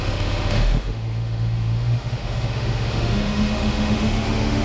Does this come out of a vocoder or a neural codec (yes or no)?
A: yes